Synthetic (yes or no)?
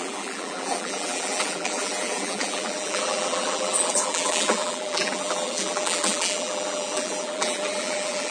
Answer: yes